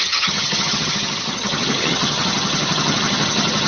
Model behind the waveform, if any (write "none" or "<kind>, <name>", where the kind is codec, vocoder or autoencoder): vocoder, HiFi-GAN